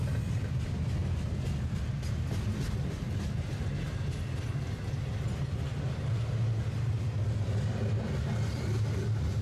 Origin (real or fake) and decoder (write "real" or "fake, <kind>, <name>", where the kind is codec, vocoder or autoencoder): real